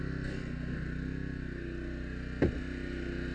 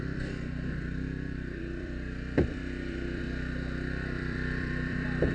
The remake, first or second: second